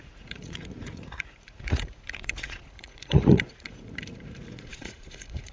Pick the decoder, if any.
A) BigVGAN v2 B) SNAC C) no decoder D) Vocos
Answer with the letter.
D